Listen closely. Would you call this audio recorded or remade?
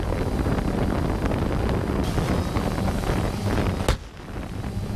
recorded